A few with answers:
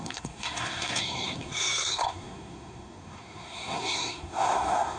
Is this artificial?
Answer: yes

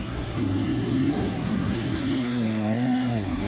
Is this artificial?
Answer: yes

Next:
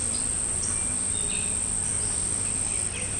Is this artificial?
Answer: no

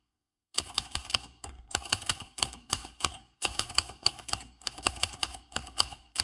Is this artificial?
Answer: yes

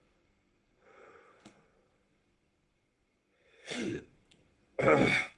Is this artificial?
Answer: yes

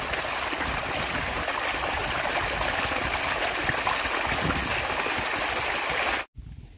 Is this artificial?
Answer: no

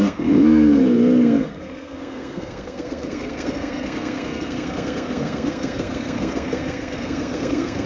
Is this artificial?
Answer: yes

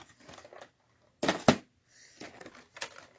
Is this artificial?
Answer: no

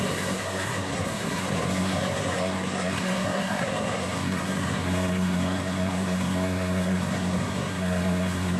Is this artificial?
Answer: yes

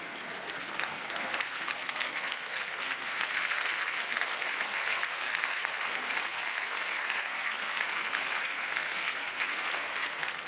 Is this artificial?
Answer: yes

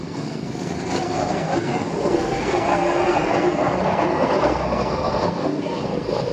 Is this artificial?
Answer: yes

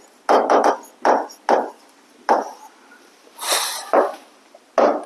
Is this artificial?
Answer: no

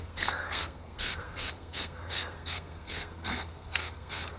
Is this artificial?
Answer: yes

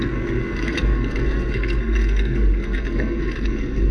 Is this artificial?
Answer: yes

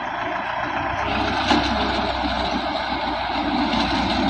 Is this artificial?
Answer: no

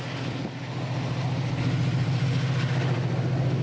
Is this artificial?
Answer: no